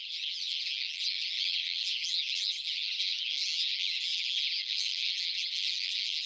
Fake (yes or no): yes